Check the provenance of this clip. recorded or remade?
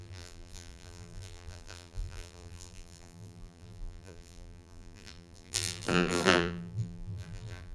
remade